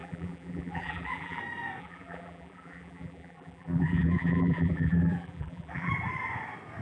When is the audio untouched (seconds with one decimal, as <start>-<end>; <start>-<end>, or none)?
1.4-1.8; 5.9-6.8

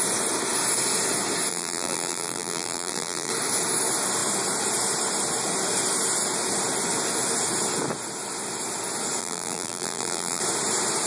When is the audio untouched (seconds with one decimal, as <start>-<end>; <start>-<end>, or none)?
0.0-1.5; 3.3-9.2; 10.4-11.1

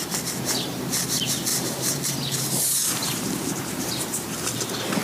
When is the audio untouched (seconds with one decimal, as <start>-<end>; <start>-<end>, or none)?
0.0-1.5; 4.5-5.0